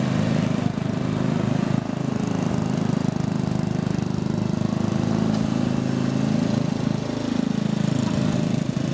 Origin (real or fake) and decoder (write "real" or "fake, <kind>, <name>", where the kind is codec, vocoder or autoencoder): real